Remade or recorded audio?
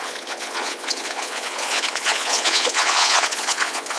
remade